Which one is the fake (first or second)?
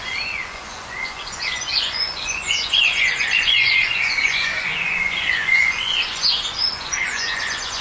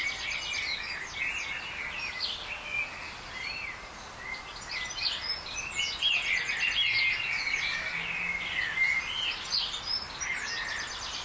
first